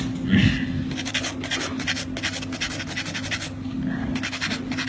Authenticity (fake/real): real